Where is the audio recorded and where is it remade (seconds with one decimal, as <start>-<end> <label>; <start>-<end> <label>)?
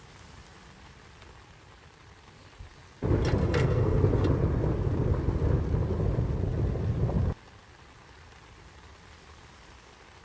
0.0-3.4 recorded; 3.4-4.0 remade; 4.0-10.2 recorded